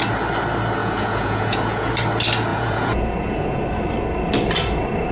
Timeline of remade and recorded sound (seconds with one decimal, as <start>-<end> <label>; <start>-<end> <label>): 0.0-0.8 recorded; 0.8-1.9 remade; 1.9-2.5 recorded; 2.5-3.6 remade; 3.6-5.1 recorded